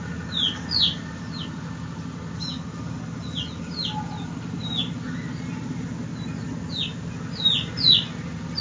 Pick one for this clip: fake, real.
real